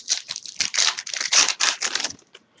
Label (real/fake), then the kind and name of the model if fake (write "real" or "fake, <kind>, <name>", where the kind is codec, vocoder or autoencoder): real